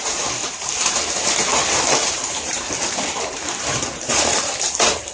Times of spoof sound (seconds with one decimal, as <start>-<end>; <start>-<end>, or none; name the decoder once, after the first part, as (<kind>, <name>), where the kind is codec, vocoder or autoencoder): 0.0-5.1 (vocoder, BigVGAN v2)